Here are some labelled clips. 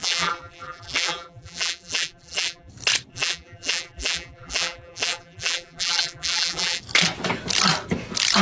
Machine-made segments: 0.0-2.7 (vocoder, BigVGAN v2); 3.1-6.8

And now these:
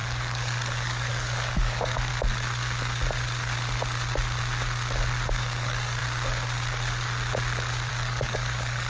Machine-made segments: 0.0-2.1 (codec, DAC); 5.3-6.0; 7.9-8.9